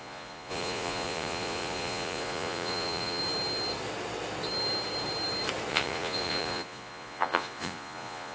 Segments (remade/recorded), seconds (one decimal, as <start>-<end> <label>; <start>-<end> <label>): 0.0-3.2 remade; 3.2-5.7 recorded; 5.7-8.3 remade